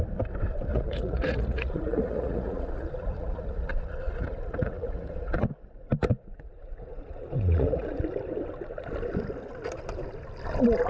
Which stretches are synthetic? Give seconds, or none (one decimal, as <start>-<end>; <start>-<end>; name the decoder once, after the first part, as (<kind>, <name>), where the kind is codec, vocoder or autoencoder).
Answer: 0.7-5.5 (vocoder, Vocos); 6.1-8.0